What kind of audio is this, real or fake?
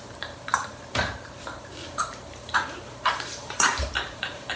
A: fake